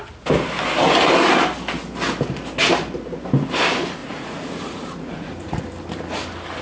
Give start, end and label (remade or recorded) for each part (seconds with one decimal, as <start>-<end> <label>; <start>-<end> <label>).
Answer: 0.0-4.0 recorded; 4.0-5.6 remade; 5.6-6.6 recorded